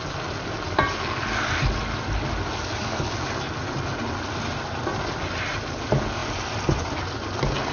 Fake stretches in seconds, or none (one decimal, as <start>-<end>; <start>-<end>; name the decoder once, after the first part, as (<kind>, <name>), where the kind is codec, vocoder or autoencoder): none